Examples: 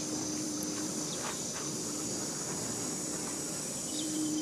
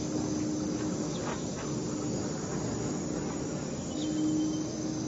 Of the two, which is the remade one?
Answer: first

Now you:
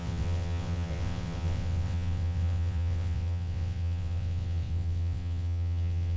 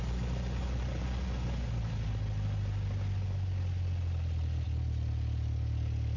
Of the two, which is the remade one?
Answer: first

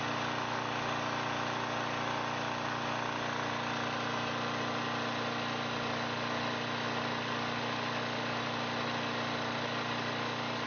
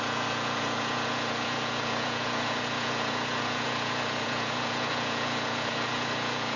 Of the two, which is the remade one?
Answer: second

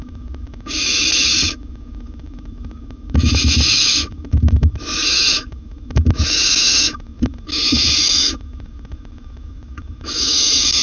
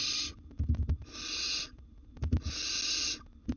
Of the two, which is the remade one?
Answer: first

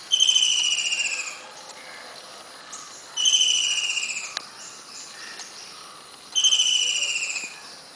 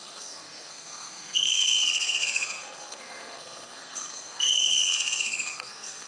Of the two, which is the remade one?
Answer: second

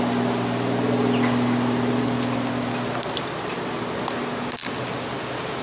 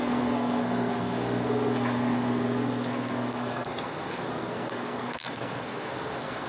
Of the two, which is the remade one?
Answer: second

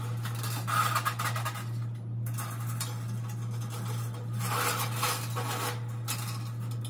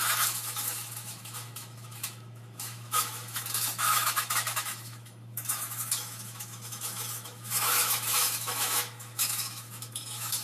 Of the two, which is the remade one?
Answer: second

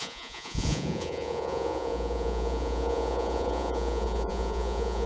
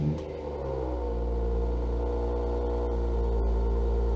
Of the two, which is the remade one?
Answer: first